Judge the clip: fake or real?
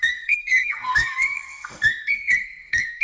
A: fake